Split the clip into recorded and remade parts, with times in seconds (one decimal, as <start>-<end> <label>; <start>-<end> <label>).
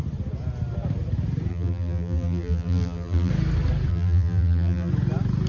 0.0-1.5 recorded; 1.5-3.3 remade; 3.3-3.9 recorded; 3.9-4.9 remade; 4.9-5.5 recorded